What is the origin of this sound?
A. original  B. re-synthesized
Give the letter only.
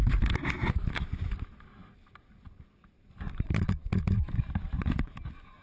A